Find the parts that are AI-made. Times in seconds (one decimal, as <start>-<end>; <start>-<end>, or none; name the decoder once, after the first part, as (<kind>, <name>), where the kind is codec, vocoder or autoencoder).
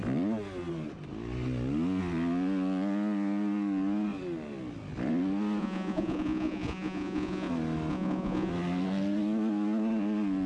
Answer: 5.6-7.5 (vocoder, Vocos); 7.9-8.5